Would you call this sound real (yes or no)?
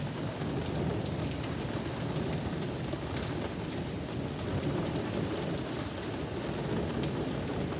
yes